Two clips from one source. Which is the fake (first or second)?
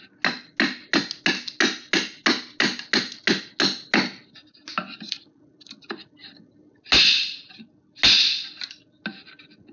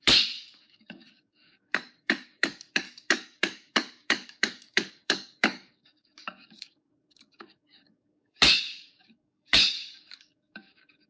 second